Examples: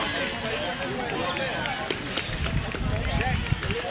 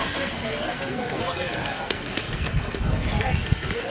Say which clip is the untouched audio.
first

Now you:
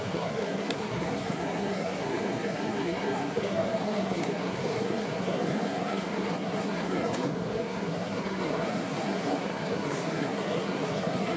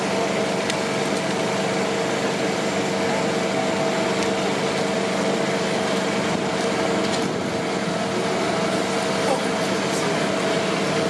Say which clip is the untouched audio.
second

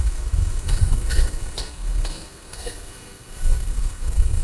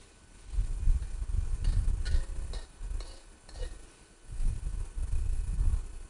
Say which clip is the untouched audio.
second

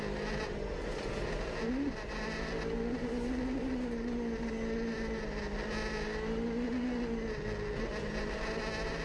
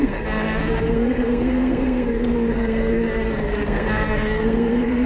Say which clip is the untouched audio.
first